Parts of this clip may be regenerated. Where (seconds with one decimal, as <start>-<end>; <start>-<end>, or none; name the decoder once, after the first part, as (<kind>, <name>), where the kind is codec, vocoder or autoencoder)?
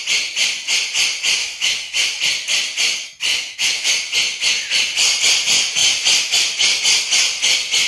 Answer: 1.4-2.2 (autoencoder, DAC-VAE); 3.3-3.9